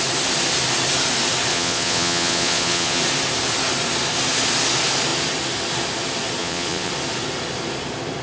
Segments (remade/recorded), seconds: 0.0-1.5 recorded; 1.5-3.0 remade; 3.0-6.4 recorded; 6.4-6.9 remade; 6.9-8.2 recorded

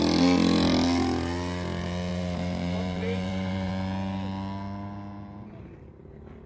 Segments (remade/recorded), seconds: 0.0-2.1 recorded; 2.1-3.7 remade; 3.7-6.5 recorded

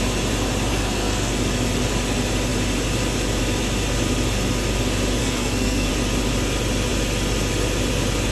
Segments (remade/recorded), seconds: 0.0-0.7 recorded; 0.7-1.3 remade; 1.3-5.2 recorded; 5.2-5.9 remade; 5.9-8.3 recorded

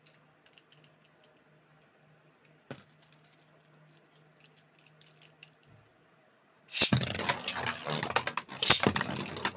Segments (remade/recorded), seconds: 0.0-5.9 recorded; 5.9-7.2 remade; 7.2-9.6 recorded